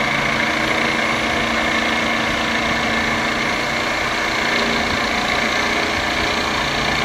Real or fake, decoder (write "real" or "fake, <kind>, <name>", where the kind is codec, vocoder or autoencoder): real